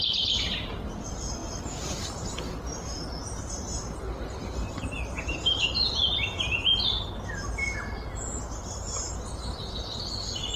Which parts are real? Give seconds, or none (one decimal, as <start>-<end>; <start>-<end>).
0.0-10.6